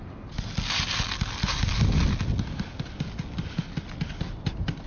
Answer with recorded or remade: recorded